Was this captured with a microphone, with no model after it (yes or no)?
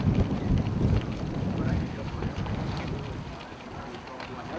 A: yes